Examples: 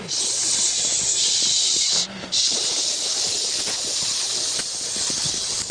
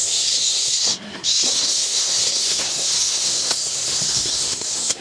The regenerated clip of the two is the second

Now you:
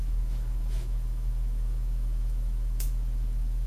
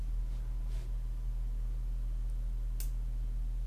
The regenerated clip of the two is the first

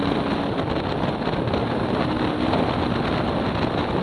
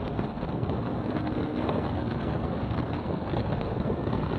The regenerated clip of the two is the second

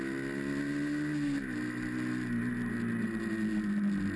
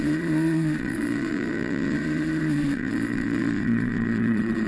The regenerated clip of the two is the second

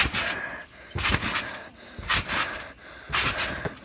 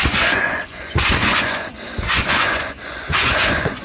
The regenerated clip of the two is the second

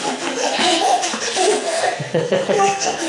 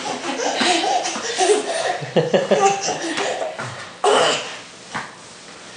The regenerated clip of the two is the first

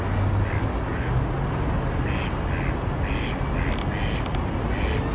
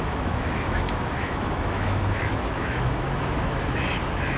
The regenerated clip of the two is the second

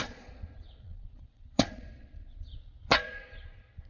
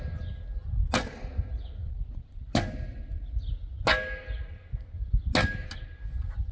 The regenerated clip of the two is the first